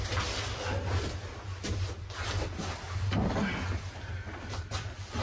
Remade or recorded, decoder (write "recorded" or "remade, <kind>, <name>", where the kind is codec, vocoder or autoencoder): recorded